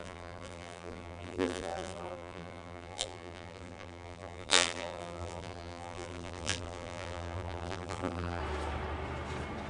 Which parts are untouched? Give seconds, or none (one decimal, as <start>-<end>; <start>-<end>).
8.4-9.7